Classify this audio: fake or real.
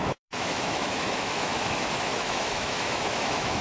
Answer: fake